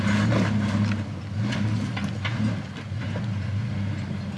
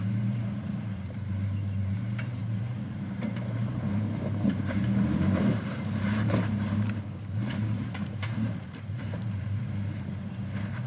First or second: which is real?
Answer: first